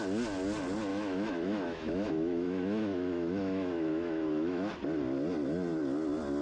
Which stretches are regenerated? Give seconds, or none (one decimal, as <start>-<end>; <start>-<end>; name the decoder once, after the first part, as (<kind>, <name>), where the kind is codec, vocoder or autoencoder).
0.9-4.7 (autoencoder, DAC-VAE)